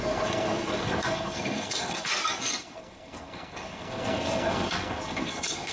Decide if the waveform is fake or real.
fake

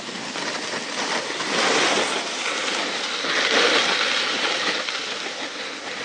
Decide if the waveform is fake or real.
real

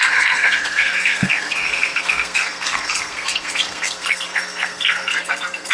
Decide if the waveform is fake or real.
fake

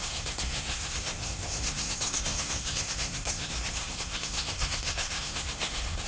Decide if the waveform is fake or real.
fake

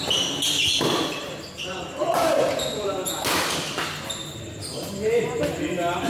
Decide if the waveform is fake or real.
real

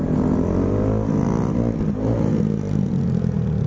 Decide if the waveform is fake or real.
real